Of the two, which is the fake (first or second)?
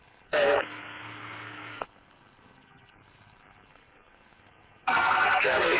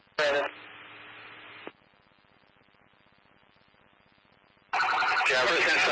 first